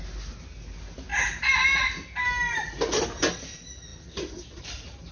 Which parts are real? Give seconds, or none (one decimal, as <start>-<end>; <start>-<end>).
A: 0.0-5.1